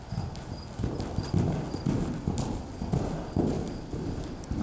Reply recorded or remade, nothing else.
recorded